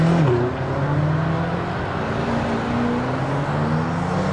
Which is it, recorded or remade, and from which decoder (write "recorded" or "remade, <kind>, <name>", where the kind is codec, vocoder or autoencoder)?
recorded